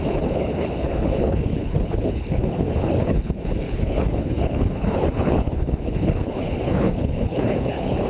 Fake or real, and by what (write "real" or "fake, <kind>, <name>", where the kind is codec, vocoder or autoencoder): fake, codec, HILCodec